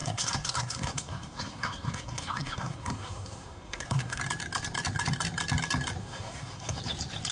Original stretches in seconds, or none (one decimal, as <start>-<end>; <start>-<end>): 4.2-6.0; 6.8-7.3